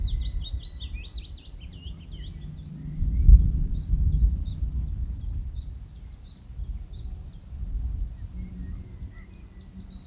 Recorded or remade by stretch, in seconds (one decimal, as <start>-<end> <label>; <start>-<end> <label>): 0.0-3.3 recorded; 3.3-3.8 remade; 3.8-5.4 recorded; 5.4-6.5 remade; 6.5-10.1 recorded